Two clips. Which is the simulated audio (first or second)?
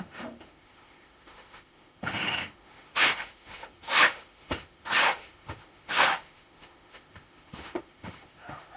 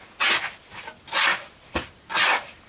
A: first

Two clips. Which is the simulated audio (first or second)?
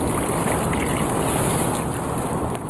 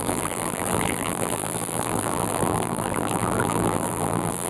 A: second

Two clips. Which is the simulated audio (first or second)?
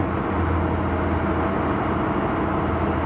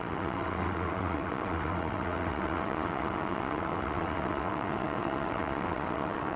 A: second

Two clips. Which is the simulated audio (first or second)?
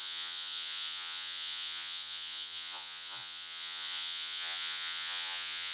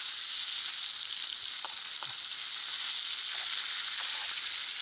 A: first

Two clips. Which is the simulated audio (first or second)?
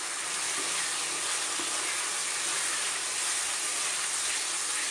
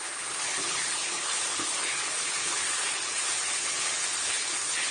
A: second